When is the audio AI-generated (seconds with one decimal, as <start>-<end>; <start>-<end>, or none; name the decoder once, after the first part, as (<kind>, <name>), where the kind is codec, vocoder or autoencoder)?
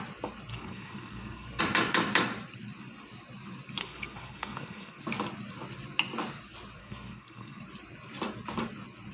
0.5-1.6 (codec, SNAC); 3.8-5.0; 6.8-7.6